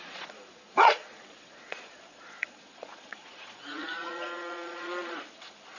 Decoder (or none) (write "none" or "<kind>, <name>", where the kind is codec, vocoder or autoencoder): vocoder, Vocos